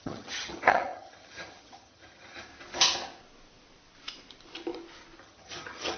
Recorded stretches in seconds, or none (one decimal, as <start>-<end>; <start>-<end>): 2.5-5.2